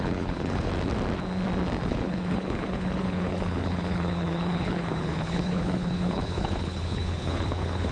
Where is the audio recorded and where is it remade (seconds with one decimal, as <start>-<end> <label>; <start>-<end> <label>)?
0.0-0.7 remade; 0.7-1.9 recorded; 1.9-7.9 remade